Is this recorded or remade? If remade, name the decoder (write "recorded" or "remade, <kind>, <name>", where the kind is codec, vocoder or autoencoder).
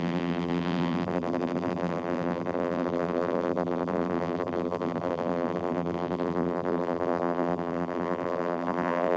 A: remade, vocoder, BigVGAN v2